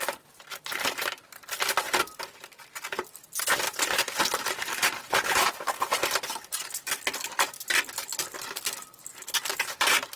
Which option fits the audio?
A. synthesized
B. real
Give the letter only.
B